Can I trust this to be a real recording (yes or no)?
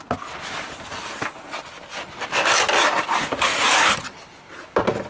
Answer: yes